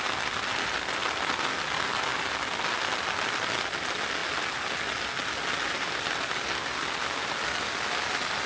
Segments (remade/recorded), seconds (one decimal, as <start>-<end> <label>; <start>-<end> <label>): 0.0-8.5 recorded